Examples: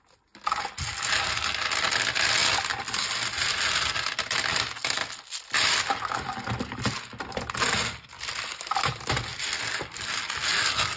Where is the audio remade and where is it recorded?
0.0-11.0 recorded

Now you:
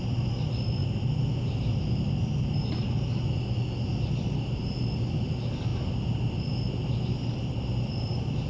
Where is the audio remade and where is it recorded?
0.0-8.5 recorded

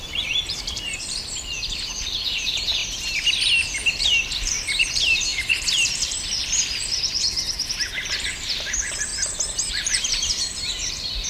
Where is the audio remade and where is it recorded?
0.0-2.8 remade; 2.8-3.9 recorded; 3.9-9.1 remade; 9.1-9.7 recorded; 9.7-11.3 remade

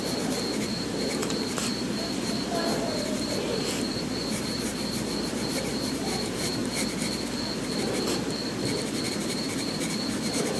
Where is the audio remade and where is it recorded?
0.0-4.7 remade; 4.7-5.3 recorded; 5.3-6.6 remade; 6.6-9.1 recorded; 9.1-10.6 remade

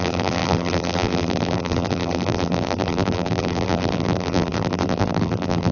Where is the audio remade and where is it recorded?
0.0-5.7 remade